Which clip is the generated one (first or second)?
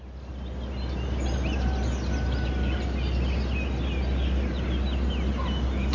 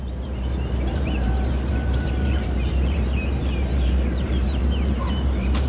second